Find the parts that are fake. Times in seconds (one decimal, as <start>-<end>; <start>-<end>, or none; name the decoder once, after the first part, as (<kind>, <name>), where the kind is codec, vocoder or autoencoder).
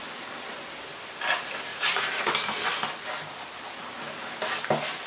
1.7-2.3 (vocoder, Vocos)